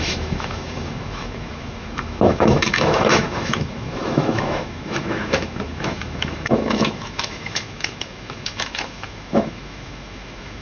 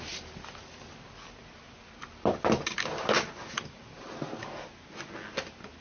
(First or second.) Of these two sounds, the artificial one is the first